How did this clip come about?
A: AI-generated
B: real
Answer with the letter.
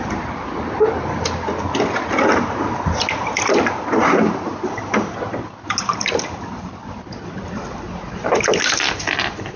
B